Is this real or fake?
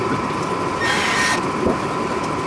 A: real